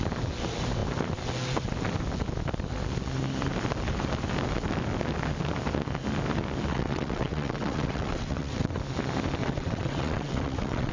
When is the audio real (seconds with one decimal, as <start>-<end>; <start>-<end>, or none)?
0.0-6.7; 8.8-9.4